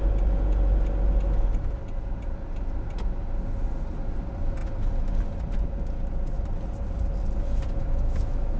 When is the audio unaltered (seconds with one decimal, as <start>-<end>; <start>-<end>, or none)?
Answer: 0.0-7.8